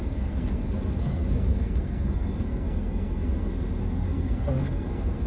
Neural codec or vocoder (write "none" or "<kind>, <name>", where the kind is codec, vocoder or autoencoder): codec, SNAC